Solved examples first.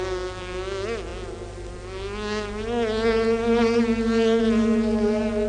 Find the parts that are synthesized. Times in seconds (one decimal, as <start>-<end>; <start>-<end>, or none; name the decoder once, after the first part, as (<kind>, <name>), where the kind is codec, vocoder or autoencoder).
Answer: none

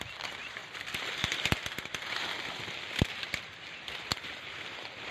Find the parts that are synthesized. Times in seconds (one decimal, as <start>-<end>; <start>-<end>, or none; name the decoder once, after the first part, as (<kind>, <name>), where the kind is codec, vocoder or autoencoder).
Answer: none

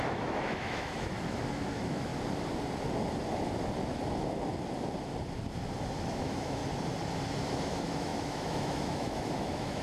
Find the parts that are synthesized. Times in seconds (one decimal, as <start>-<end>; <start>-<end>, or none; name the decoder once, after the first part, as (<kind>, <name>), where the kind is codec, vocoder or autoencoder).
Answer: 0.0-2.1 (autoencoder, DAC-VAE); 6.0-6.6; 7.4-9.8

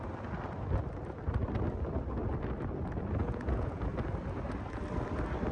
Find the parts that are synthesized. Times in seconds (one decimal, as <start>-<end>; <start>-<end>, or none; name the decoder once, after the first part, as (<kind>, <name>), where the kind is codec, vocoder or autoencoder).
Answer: 3.2-3.8 (vocoder, Vocos)

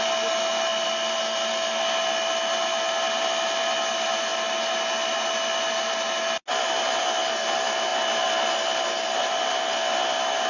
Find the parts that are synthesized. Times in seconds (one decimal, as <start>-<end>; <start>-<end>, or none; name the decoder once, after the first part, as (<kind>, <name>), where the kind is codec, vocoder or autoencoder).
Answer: none

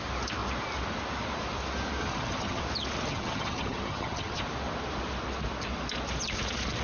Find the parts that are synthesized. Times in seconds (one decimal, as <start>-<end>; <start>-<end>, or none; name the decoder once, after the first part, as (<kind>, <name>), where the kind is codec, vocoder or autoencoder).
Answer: 2.0-2.6 (vocoder, HiFi-GAN); 3.1-4.4

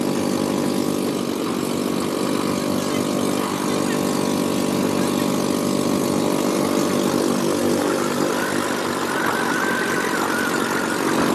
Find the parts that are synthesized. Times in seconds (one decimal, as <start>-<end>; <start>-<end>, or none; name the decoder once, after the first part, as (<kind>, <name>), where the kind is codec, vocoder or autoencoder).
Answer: none